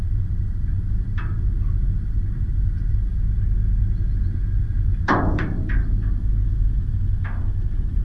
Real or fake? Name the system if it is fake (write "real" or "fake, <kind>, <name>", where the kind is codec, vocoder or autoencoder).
fake, vocoder, BigVGAN v2